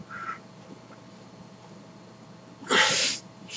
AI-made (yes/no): no